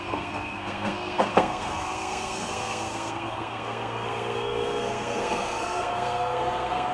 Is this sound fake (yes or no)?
yes